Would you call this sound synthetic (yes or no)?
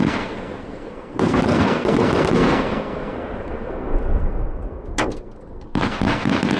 yes